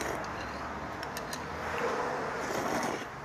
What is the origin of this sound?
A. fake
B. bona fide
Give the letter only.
B